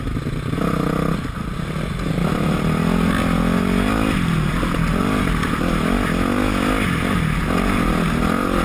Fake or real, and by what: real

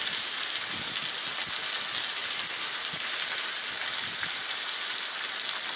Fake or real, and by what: real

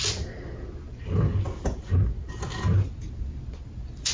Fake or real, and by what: real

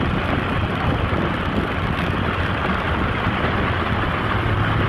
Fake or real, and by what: real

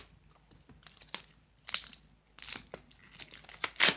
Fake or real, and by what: real